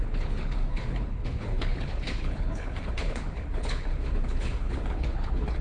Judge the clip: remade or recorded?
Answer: remade